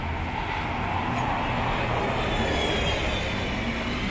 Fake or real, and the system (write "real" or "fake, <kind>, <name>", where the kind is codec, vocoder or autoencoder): real